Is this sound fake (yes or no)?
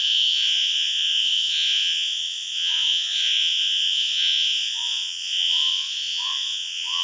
yes